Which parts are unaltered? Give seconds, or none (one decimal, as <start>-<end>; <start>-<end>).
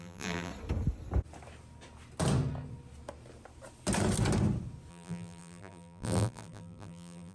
0.5-4.9